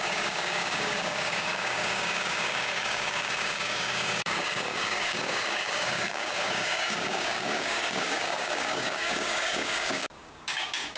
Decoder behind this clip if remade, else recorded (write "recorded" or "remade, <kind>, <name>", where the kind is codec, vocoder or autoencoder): remade, codec, DAC